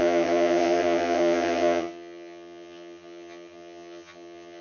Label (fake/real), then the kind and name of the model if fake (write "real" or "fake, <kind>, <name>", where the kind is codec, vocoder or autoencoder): fake, vocoder, HiFi-GAN